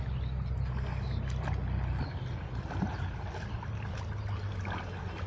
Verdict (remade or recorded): recorded